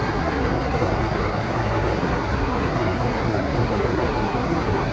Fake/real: fake